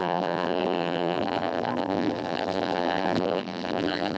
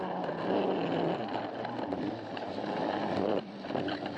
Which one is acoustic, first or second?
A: second